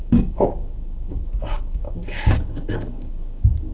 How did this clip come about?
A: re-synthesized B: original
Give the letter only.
A